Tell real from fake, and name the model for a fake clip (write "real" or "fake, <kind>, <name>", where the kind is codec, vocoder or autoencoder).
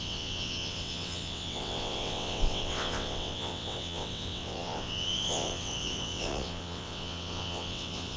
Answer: fake, vocoder, WaveNeXt